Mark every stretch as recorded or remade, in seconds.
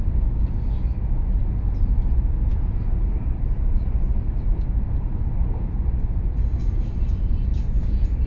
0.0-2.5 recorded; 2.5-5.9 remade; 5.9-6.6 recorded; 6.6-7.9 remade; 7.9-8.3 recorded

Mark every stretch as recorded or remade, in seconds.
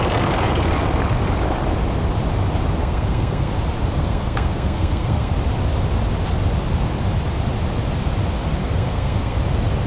0.0-2.8 recorded; 2.8-3.5 remade; 3.5-4.0 recorded; 4.0-5.3 remade; 5.3-8.6 recorded; 8.6-9.4 remade; 9.4-9.9 recorded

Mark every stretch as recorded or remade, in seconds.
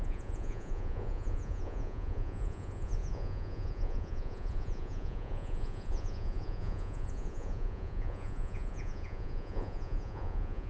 0.0-10.7 remade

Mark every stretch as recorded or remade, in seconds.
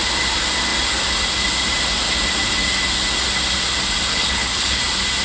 0.0-4.1 recorded; 4.1-4.8 remade; 4.8-5.2 recorded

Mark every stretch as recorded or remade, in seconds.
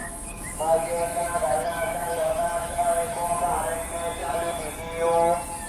0.0-3.4 remade; 3.4-4.2 recorded; 4.2-4.7 remade; 4.7-5.7 recorded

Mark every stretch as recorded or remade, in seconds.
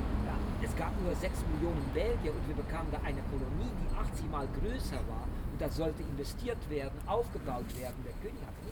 0.0-1.1 recorded; 1.1-1.9 remade; 1.9-2.3 recorded; 2.3-3.5 remade; 3.5-8.7 recorded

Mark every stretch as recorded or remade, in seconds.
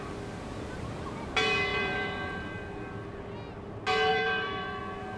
0.0-1.7 recorded; 1.7-2.6 remade; 2.6-4.1 recorded; 4.1-4.8 remade; 4.8-5.2 recorded